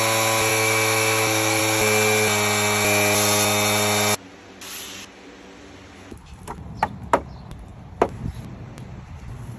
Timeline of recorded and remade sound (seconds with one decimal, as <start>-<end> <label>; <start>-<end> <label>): 0.0-0.5 recorded; 0.5-1.6 remade; 1.6-9.6 recorded